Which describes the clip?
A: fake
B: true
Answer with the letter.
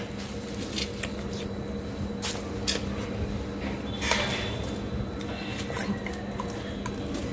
B